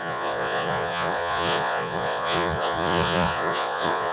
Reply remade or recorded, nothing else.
remade